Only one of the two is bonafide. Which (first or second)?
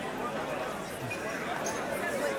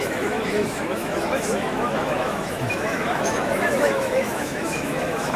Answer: first